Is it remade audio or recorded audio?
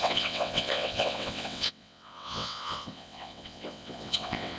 remade